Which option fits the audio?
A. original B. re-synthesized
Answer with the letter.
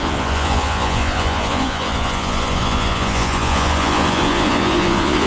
B